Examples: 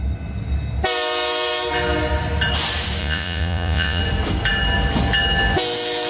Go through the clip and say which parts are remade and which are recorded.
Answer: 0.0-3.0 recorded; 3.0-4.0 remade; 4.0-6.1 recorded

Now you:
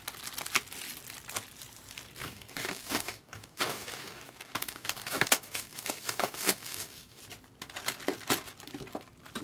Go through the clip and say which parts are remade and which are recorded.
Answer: 0.0-2.2 recorded; 2.2-7.2 remade; 7.2-9.4 recorded

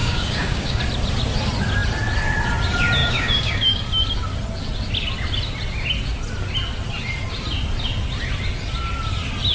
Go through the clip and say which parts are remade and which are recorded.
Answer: 0.0-0.8 remade; 0.8-3.0 recorded; 3.0-3.8 remade; 3.8-9.5 recorded

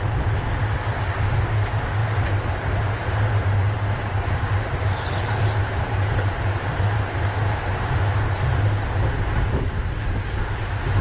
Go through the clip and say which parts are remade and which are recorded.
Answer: 0.0-2.0 recorded; 2.0-6.8 remade; 6.8-11.0 recorded

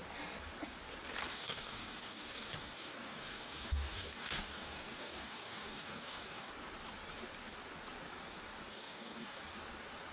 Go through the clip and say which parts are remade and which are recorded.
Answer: 0.0-1.3 recorded; 1.3-6.5 remade; 6.5-8.7 recorded; 8.7-9.4 remade; 9.4-10.1 recorded